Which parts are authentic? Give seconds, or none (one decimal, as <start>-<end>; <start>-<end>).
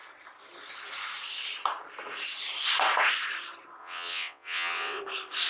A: 0.0-3.8; 5.0-5.5